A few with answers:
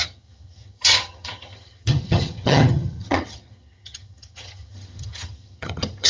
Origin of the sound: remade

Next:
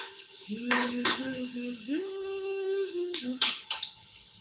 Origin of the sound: remade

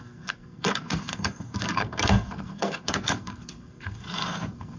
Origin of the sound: remade